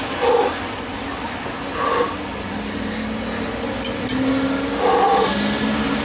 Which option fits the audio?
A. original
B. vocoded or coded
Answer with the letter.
A